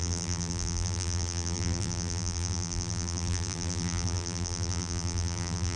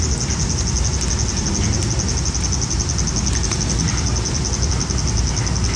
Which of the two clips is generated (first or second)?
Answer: first